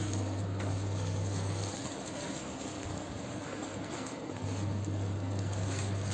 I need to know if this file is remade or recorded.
remade